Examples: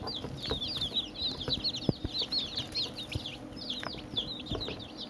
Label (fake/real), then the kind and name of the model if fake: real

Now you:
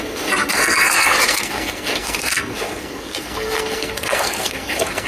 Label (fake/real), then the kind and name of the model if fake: fake, codec, SNAC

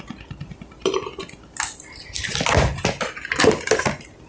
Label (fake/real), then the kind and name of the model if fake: real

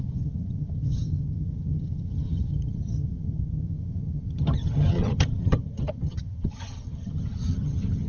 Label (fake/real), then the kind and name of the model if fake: fake, vocoder, HiFi-GAN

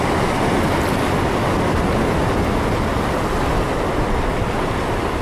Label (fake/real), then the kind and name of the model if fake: real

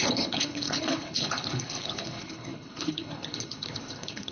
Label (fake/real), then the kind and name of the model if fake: fake, codec, HILCodec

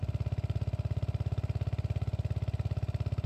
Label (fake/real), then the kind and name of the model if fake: real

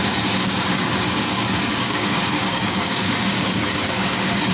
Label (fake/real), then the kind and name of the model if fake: fake, codec, DAC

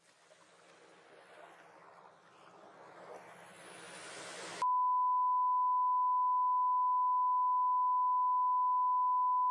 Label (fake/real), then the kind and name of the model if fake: real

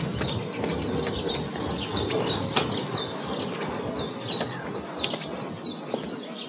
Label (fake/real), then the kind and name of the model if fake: real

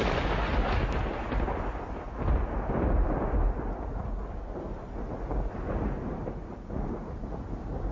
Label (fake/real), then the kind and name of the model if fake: real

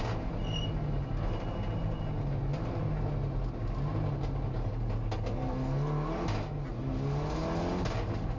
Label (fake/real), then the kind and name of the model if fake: real